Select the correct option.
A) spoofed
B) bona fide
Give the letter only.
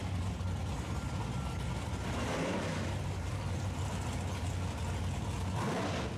B